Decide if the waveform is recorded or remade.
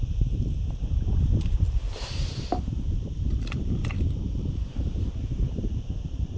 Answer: remade